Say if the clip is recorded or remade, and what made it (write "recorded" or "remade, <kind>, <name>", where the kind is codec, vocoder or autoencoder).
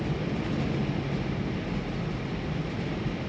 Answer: recorded